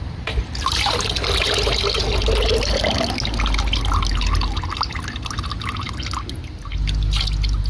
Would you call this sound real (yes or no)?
yes